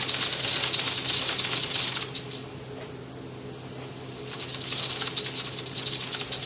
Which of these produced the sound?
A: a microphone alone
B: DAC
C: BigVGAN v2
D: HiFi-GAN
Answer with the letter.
A